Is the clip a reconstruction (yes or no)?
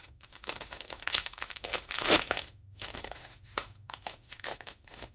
yes